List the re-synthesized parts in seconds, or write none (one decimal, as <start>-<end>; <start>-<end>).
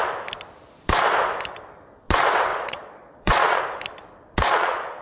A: 2.5-3.6; 4.4-5.0